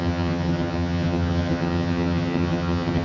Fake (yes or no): yes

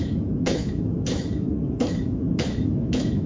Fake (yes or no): yes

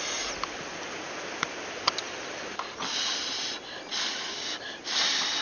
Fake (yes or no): no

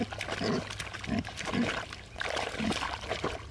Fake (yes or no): no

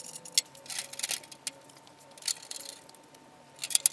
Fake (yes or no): no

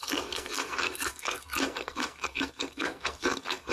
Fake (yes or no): yes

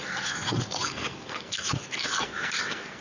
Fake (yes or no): yes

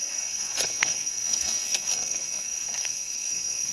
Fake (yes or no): yes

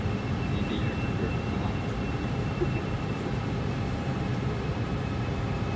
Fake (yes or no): yes